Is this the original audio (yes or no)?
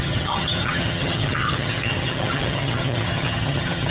no